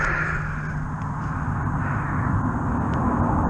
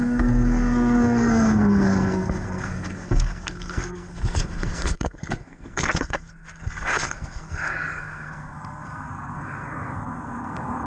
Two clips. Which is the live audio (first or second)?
first